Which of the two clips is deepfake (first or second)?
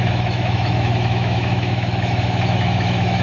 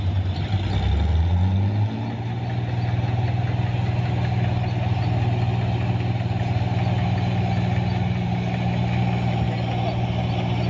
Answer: first